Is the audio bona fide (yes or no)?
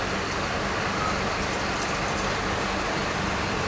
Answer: yes